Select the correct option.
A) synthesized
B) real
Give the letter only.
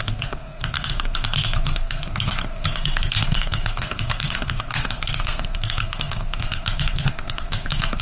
A